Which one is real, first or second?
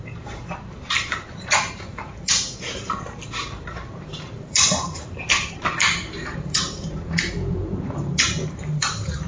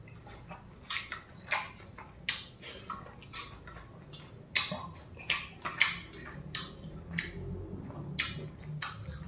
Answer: second